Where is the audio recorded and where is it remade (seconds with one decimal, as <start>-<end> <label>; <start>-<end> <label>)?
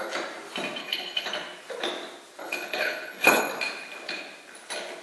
0.0-0.8 recorded; 0.8-1.3 remade; 1.3-2.4 recorded; 2.4-3.4 remade; 3.4-5.0 recorded